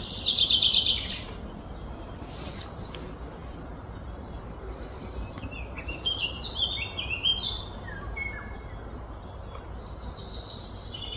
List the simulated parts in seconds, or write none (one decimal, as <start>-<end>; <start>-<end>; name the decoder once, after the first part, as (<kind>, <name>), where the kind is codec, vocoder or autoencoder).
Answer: none